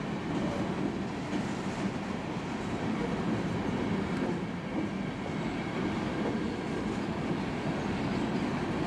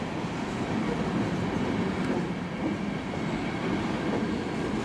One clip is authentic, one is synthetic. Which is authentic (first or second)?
first